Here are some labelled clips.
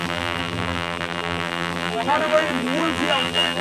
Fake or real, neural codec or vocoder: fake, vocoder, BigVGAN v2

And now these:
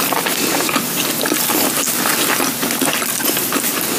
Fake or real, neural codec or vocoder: real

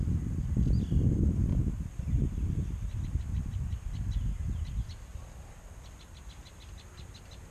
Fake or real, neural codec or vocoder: real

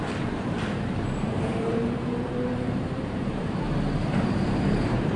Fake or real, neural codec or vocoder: fake, vocoder, BigVGAN v2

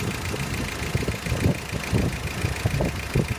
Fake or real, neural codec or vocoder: real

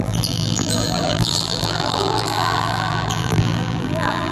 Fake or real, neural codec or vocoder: fake, vocoder, BigVGAN v2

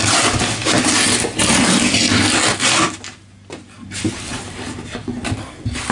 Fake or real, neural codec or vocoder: real